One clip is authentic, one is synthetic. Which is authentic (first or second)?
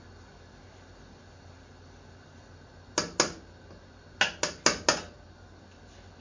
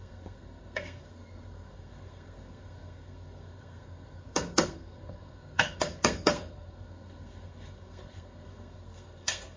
first